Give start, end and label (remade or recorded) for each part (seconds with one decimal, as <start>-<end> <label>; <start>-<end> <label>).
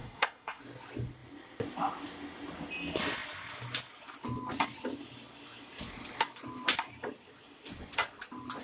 0.0-0.6 remade; 0.6-8.6 recorded